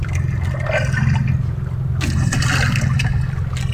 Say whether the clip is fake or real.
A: real